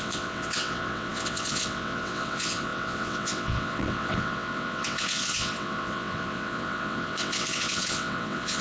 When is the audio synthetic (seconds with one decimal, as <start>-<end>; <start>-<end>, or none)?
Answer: 0.0-8.6

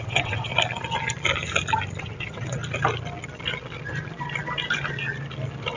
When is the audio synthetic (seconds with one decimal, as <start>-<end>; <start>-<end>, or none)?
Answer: 0.0-0.5; 2.0-2.6

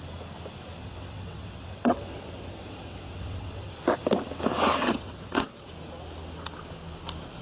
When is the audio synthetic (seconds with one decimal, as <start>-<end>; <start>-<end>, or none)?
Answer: 0.8-3.7; 4.8-5.7

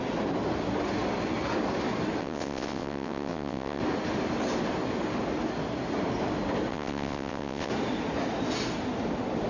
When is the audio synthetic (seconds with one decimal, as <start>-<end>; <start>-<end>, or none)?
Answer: 2.2-3.8; 6.7-7.7

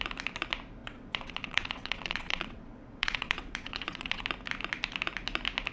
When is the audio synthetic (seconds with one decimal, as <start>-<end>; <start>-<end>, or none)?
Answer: 0.8-4.2

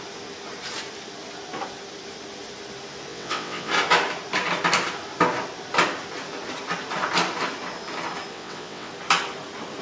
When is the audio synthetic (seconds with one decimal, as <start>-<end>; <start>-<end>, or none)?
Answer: 3.1-3.7; 8.3-8.9